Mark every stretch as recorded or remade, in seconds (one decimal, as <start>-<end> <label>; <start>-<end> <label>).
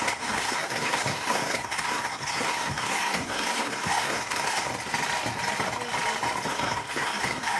0.0-4.7 remade; 4.7-6.5 recorded; 6.5-7.6 remade